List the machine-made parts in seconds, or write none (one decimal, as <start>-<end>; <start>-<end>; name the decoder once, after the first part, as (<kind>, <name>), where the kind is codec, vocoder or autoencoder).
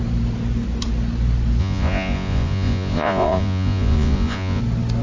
1.6-4.6 (vocoder, Vocos)